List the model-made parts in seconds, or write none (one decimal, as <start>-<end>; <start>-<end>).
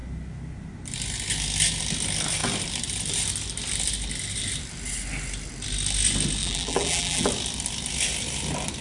6.4-7.3